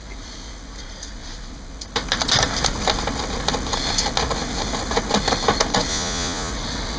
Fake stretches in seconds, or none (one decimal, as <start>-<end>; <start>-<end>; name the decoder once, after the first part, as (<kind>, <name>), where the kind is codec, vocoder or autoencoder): 5.9-6.5 (vocoder, Vocos)